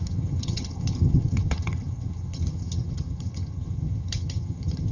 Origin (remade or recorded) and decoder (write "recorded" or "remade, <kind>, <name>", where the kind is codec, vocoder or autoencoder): remade, vocoder, HiFi-GAN